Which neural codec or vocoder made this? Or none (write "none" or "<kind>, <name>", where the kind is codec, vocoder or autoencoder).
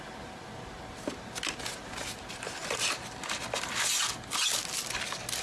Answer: none